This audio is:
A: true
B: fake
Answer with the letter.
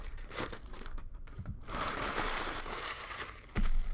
B